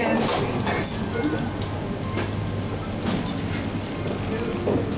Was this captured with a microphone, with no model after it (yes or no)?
yes